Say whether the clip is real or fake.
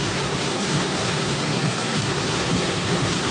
fake